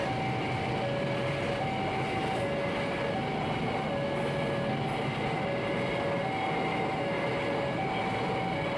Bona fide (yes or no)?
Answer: yes